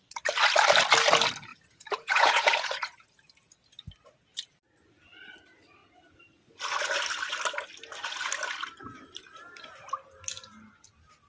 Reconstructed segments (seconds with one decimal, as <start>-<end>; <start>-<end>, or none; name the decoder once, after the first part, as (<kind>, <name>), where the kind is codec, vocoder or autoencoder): 1.5-3.1 (vocoder, Vocos)